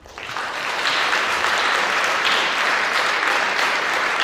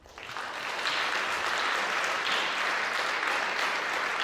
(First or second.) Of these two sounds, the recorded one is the second